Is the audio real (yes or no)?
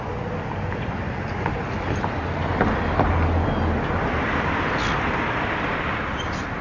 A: no